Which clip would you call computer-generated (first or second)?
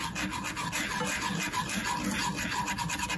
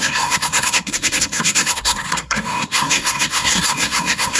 second